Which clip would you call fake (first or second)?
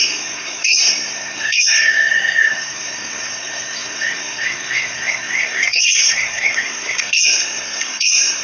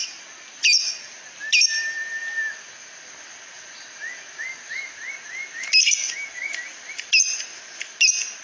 first